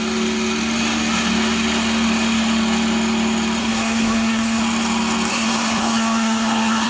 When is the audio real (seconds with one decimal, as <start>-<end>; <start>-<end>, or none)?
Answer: 0.0-3.6; 4.6-5.3